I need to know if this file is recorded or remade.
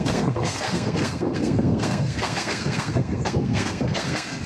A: remade